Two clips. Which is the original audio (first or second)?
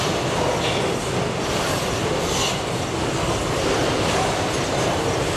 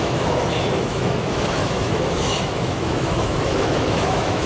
first